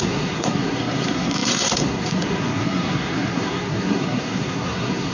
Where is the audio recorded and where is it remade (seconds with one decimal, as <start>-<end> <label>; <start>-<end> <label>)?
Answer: 0.0-5.1 remade